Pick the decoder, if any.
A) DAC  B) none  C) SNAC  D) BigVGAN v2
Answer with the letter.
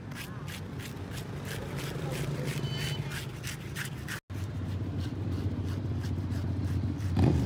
B